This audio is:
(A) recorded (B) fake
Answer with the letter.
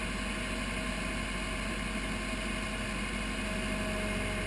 A